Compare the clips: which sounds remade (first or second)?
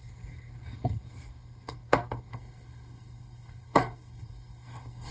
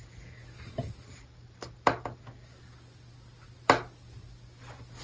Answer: first